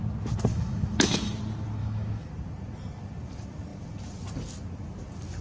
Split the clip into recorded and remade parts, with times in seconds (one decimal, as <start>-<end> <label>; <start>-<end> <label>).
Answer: 0.0-0.5 recorded; 0.5-1.3 remade; 1.3-1.8 recorded; 1.8-2.3 remade; 2.3-5.4 recorded